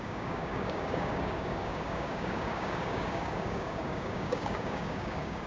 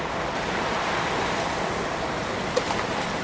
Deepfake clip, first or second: first